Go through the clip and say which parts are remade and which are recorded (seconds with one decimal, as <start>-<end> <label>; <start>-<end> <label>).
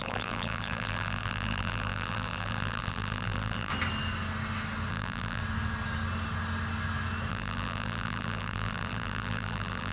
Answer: 0.0-3.7 remade; 3.7-4.9 recorded; 4.9-5.4 remade; 5.4-7.3 recorded; 7.3-9.9 remade